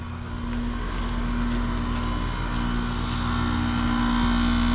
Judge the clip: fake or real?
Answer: real